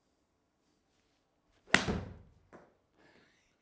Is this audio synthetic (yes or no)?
no